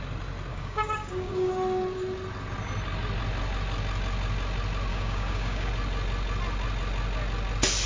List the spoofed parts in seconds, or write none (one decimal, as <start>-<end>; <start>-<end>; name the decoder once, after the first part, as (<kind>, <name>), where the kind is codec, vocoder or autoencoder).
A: 0.5-1.5 (codec, DAC); 4.9-5.7